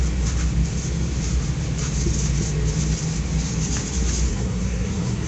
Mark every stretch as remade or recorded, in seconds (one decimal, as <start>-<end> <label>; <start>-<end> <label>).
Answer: 0.0-4.3 recorded; 4.3-5.3 remade